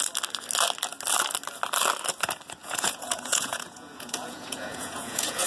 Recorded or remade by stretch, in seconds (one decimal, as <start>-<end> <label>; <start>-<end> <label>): 0.0-2.6 recorded; 2.6-5.5 remade